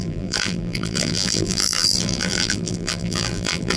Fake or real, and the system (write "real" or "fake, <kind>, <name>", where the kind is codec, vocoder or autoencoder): fake, vocoder, BigVGAN v2